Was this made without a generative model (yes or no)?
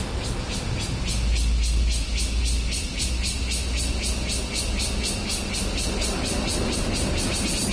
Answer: yes